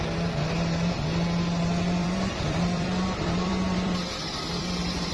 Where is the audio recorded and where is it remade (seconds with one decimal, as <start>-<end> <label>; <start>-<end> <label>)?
0.0-2.0 recorded; 2.0-5.1 remade